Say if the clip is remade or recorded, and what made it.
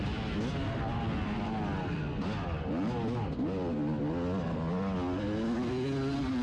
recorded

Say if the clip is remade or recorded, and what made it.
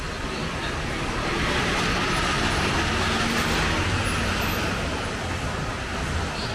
recorded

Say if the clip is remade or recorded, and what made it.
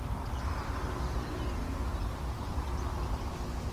recorded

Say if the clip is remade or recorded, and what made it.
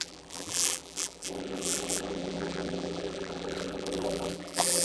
remade, vocoder, BigVGAN v2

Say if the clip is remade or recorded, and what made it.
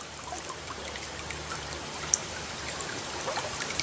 remade, vocoder, BigVGAN v2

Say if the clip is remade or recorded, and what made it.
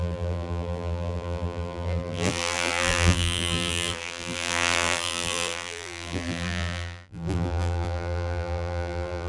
remade, vocoder, BigVGAN v2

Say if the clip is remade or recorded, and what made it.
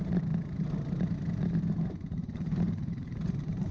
remade, vocoder, BigVGAN v2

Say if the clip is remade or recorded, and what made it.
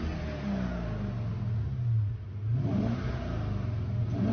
recorded